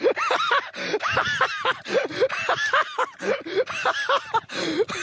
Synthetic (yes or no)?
no